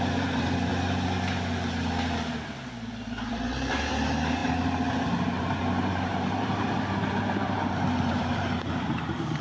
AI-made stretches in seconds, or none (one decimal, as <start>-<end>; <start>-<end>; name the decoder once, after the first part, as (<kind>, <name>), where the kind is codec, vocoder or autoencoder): 0.0-0.7 (vocoder, BigVGAN v2); 3.3-9.4

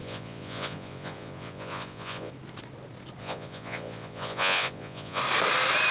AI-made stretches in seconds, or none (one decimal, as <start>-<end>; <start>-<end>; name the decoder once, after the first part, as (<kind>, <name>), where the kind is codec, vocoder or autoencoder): 0.0-2.3 (vocoder, Vocos); 3.2-5.2

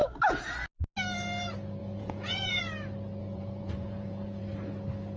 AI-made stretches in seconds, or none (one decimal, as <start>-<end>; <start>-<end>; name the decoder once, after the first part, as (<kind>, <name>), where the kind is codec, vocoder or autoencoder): 1.8-2.6 (vocoder, Vocos); 3.2-4.4